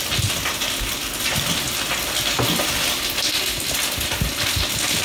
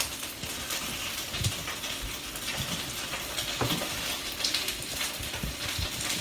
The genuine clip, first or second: first